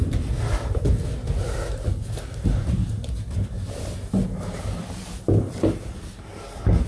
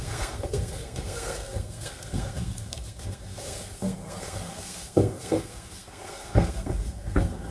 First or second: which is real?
first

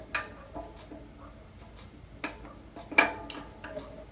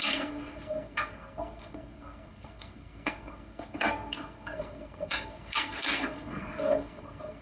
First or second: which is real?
first